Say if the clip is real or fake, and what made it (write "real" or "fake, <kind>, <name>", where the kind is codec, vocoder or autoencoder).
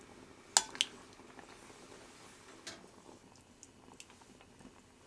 real